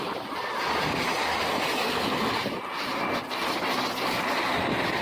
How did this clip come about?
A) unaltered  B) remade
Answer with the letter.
A